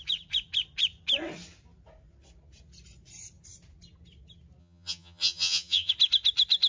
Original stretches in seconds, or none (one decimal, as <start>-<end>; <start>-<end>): 0.0-4.6; 5.9-6.7